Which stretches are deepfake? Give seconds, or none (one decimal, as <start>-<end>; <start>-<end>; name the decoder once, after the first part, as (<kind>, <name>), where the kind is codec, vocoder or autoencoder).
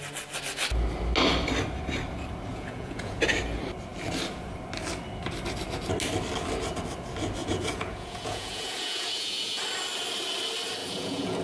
2.5-3.2 (vocoder, Vocos); 7.4-9.6; 10.8-11.4